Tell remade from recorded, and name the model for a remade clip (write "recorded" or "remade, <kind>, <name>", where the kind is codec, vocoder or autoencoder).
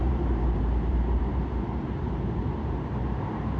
remade, vocoder, BigVGAN v2